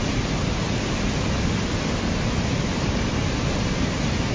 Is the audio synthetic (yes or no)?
no